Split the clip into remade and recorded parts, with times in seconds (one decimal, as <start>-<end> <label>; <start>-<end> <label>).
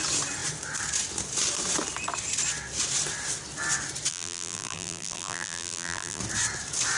0.0-4.1 recorded; 4.1-6.2 remade; 6.2-7.0 recorded